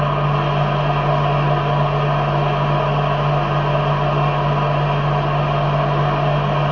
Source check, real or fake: real